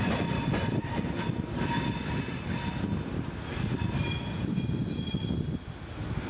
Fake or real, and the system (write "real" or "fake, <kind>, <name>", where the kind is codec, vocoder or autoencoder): real